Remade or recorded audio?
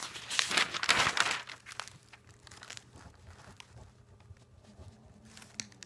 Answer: recorded